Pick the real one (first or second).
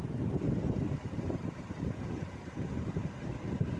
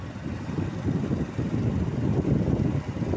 second